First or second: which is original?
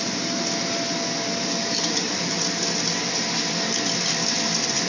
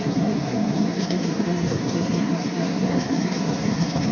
first